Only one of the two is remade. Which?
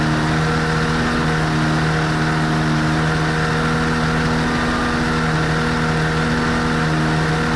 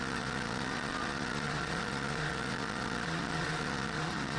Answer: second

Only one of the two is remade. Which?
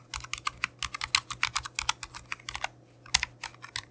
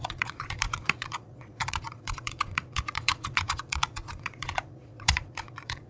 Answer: second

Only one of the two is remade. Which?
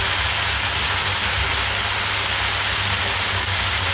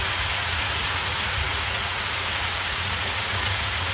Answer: second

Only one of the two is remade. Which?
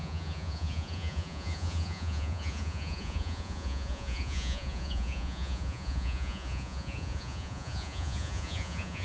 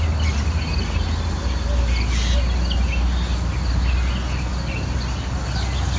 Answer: first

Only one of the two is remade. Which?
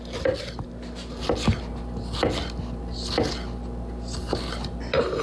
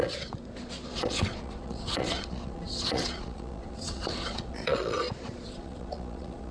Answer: second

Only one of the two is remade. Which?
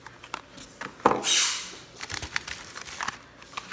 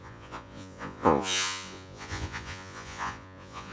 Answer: second